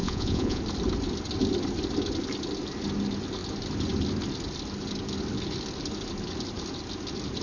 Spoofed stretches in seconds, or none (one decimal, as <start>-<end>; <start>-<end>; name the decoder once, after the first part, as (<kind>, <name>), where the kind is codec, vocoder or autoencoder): 0.0-0.6 (vocoder, Vocos)